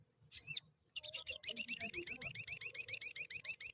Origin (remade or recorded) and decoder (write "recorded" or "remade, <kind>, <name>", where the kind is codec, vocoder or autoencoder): remade, vocoder, BigVGAN v2